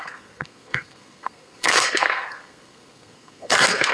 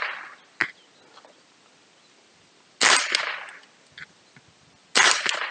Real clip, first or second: second